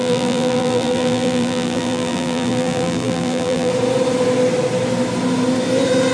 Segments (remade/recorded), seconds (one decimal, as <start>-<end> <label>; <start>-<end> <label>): 0.0-3.7 remade; 3.7-6.1 recorded